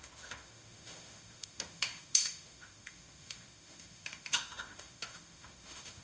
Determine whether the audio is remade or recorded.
remade